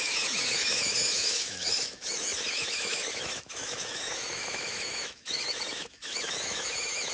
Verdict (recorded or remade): remade